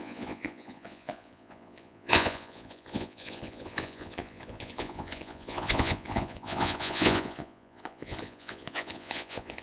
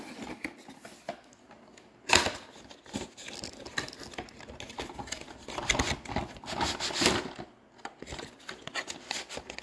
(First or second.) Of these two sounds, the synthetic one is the first